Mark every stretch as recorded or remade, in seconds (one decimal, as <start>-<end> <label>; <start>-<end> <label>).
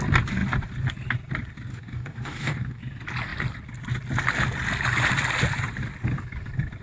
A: 0.0-1.7 recorded; 1.7-2.8 remade; 2.8-6.8 recorded